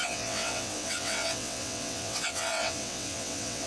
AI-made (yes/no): yes